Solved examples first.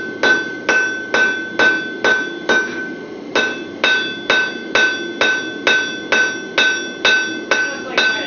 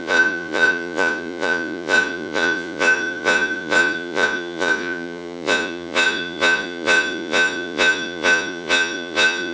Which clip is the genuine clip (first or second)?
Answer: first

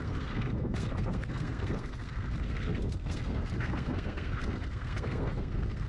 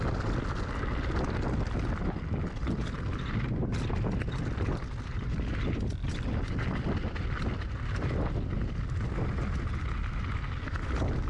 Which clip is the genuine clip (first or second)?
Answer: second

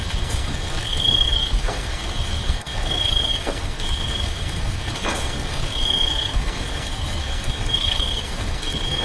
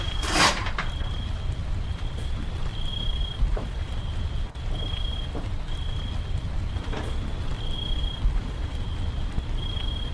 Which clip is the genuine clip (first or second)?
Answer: second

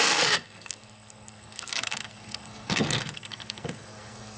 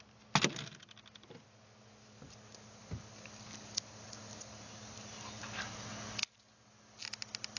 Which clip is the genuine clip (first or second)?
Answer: second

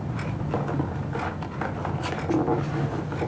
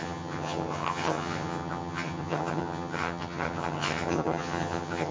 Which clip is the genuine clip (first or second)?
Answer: first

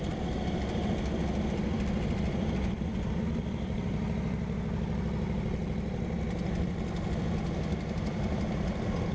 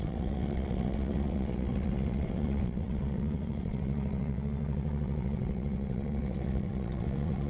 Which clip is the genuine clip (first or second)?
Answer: first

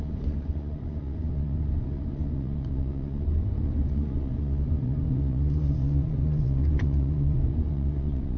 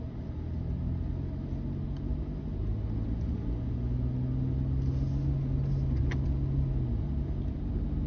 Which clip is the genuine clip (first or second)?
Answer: second